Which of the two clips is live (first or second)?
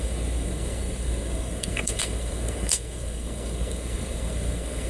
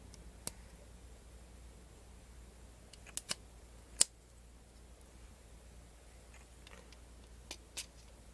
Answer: second